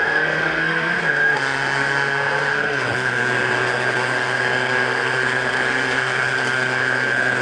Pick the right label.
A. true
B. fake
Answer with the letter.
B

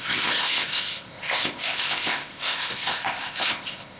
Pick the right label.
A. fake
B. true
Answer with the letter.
A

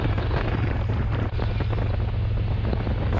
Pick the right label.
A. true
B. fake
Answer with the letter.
A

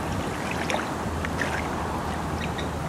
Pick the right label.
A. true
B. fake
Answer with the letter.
A